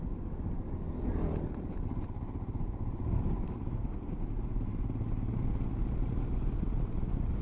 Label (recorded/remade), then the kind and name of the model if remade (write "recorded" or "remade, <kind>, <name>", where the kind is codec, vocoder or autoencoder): recorded